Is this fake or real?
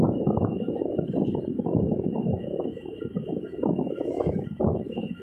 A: fake